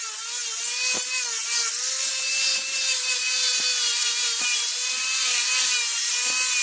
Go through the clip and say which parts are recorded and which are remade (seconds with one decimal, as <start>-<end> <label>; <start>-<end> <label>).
0.0-2.1 recorded; 2.1-6.1 remade; 6.1-6.6 recorded